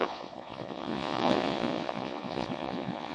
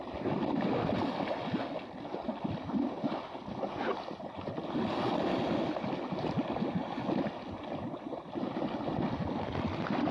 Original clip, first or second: second